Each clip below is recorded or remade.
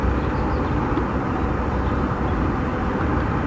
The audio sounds recorded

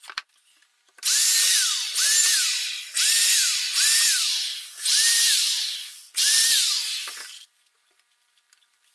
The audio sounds remade